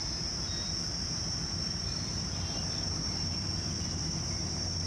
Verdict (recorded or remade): remade